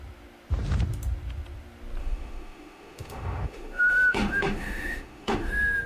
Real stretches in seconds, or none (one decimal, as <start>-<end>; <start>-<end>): 0.0-2.0; 5.5-5.9